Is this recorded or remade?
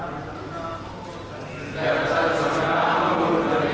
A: recorded